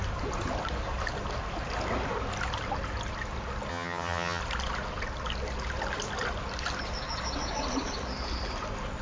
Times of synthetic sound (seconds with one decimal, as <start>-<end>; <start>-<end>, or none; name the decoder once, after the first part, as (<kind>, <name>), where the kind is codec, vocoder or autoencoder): 3.7-4.4 (vocoder, HiFi-GAN)